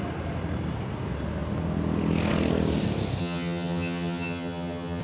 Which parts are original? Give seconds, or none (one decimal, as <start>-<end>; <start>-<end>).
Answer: 0.0-3.2